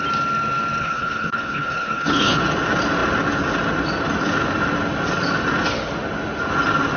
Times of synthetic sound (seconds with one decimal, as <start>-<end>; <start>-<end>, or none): 0.8-2.4